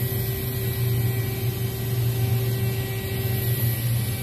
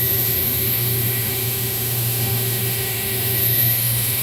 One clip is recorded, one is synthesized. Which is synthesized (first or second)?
second